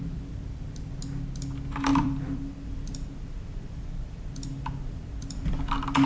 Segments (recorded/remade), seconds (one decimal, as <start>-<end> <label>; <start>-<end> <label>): 0.0-1.9 recorded; 1.9-5.6 remade; 5.6-6.1 recorded